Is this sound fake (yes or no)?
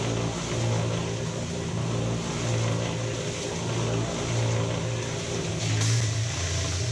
no